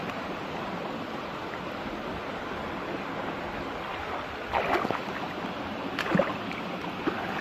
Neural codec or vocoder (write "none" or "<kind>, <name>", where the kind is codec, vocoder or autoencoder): none